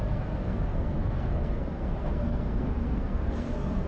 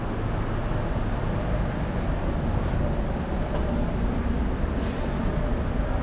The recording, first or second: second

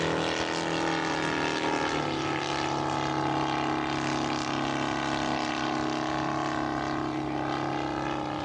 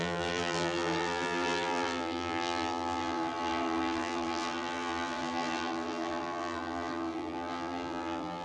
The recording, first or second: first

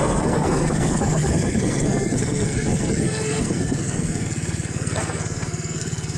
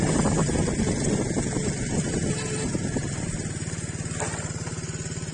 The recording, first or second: second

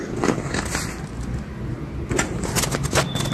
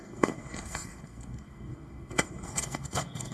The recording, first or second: first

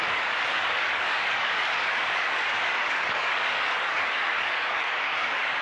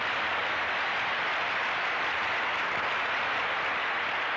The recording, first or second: second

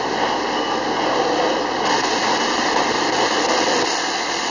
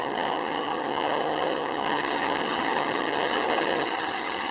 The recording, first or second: first